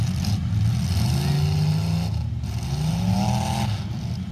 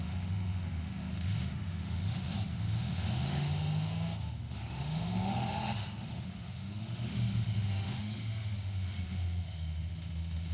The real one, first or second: first